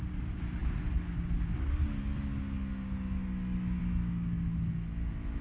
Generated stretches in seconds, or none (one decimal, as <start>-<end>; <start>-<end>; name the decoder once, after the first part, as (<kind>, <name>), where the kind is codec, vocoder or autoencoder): none